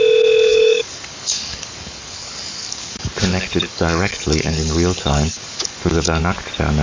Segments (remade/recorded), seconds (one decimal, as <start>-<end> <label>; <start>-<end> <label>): 0.0-0.5 recorded; 0.5-3.1 remade; 3.1-3.7 recorded; 3.7-6.2 remade; 6.2-6.8 recorded